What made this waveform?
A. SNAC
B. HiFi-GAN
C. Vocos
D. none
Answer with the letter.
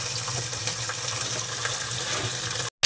D